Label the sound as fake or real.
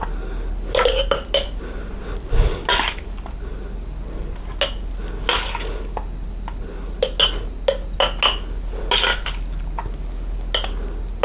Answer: real